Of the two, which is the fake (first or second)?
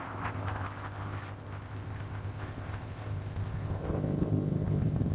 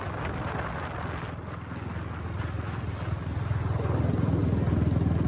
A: first